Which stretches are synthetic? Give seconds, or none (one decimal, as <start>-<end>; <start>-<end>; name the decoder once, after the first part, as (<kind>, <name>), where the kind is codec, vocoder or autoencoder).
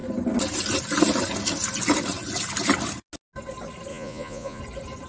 3.9-4.6 (vocoder, Vocos)